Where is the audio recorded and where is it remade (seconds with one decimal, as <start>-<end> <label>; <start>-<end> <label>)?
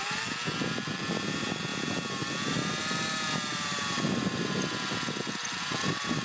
0.0-6.2 recorded